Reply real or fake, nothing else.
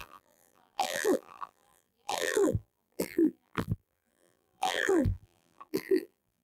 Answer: fake